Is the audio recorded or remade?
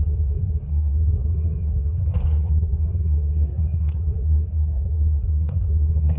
remade